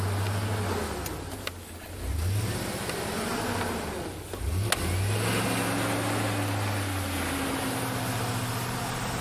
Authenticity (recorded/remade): recorded